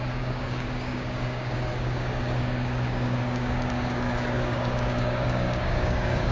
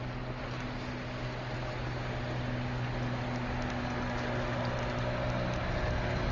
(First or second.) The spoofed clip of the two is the first